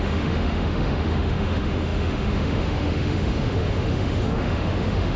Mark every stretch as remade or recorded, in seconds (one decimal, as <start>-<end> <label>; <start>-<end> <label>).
0.0-5.2 remade